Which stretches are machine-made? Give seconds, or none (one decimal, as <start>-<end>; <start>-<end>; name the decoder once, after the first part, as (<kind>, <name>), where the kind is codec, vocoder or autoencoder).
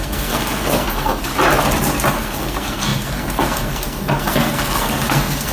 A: 0.0-1.3 (codec, SNAC); 2.1-5.5